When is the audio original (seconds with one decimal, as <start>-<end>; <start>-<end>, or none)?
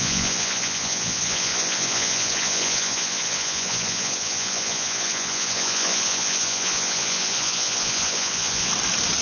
8.7-9.2